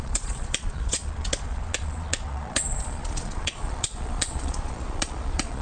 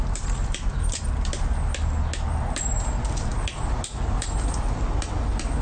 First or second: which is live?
second